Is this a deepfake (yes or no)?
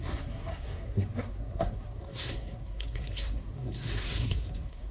yes